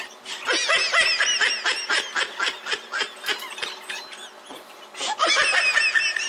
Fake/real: real